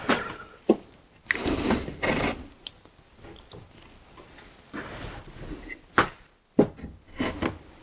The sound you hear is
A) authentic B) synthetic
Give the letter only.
A